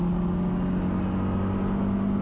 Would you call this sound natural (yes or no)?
yes